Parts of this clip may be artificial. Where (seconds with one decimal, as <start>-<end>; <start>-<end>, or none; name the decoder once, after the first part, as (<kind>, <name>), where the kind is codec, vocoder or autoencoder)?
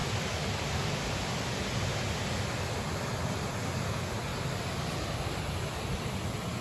none